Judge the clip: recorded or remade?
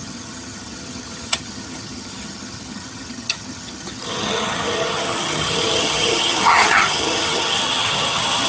remade